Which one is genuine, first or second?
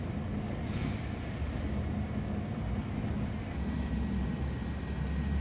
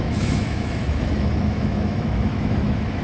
first